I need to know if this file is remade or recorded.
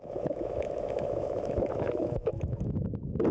remade